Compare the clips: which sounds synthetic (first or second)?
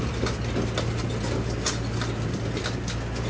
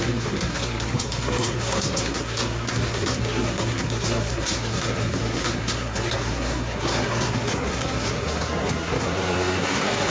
second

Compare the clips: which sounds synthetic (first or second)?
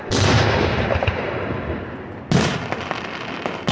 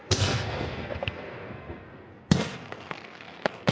second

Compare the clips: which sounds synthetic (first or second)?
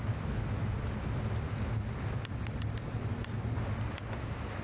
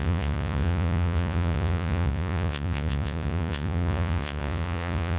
second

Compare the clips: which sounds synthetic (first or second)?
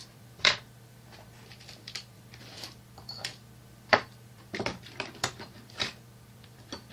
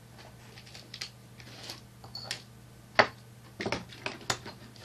first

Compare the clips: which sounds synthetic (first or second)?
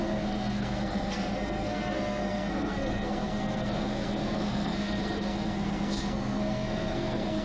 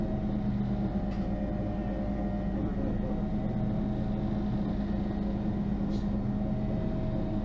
first